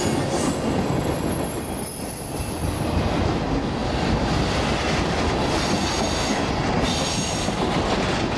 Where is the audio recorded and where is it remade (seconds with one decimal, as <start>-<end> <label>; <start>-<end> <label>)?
0.0-8.4 recorded